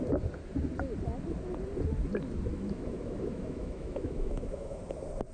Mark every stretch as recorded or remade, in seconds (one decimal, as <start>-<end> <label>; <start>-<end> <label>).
0.0-2.5 recorded; 2.5-4.8 remade; 4.8-5.3 recorded